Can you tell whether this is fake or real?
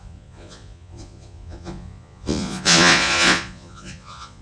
fake